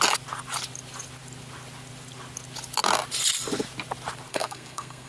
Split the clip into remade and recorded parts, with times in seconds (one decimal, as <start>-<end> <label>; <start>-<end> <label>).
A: 0.0-4.3 recorded; 4.3-5.1 remade